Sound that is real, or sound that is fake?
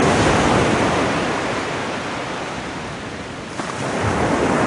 real